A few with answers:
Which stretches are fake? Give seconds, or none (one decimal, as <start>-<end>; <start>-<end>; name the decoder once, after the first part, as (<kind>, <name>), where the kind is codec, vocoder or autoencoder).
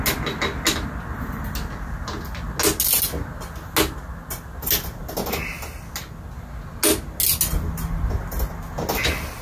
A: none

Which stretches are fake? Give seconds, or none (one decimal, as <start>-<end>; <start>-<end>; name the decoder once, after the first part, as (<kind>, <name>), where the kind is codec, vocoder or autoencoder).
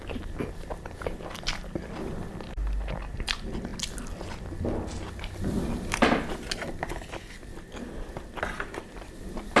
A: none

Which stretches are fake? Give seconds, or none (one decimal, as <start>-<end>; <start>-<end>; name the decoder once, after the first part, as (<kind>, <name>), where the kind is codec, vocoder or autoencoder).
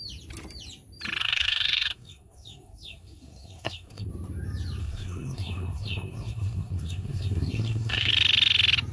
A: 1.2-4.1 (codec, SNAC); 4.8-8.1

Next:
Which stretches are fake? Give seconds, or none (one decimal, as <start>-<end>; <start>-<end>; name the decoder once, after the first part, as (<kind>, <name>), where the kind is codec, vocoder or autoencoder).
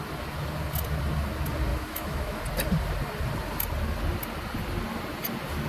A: 1.7-2.4 (autoencoder, DAC-VAE)